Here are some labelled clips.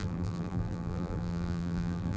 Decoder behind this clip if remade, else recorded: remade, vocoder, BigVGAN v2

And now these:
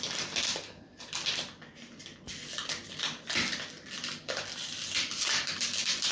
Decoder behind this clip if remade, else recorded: remade, vocoder, BigVGAN v2